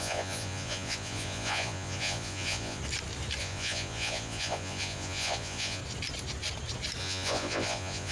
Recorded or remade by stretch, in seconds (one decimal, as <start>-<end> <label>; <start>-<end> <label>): 0.0-2.8 remade; 2.8-3.4 recorded; 3.4-5.8 remade; 5.8-7.0 recorded; 7.0-8.1 remade